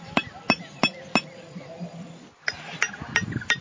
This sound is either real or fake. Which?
real